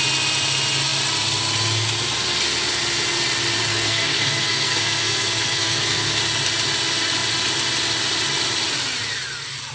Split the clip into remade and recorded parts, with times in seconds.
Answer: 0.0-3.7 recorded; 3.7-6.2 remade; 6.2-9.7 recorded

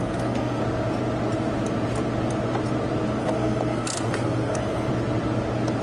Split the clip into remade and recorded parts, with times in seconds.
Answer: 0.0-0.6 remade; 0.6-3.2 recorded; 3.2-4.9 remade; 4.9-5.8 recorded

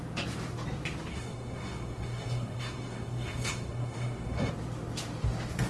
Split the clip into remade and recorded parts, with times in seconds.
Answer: 0.0-1.1 recorded; 1.1-4.5 remade; 4.5-5.7 recorded